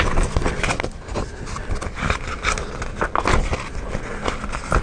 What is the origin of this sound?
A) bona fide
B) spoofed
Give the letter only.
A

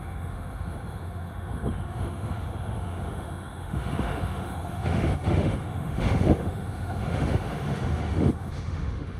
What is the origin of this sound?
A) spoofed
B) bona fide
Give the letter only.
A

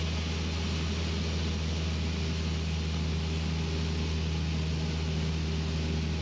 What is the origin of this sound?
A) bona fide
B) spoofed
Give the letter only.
A